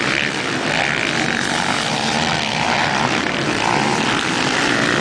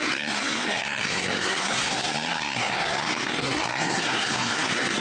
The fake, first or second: second